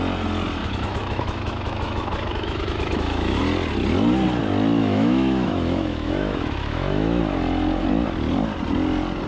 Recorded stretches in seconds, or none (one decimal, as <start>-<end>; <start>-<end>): 0.0-0.6; 3.4-4.8; 7.2-9.3